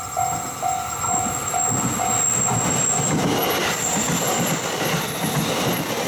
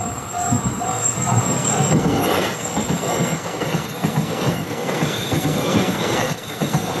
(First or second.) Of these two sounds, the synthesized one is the second